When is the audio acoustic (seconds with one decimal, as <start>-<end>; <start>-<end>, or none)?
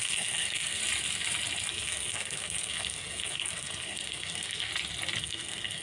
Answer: 0.8-1.7; 4.7-5.2